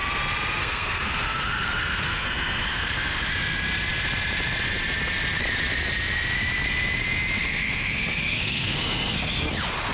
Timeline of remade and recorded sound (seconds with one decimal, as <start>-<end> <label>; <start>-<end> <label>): 0.0-0.6 recorded; 0.6-3.3 remade; 3.3-7.4 recorded; 7.4-9.5 remade; 9.5-9.9 recorded